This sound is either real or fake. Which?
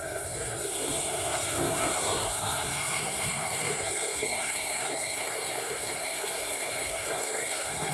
fake